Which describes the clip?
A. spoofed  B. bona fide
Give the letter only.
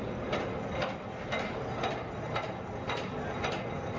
B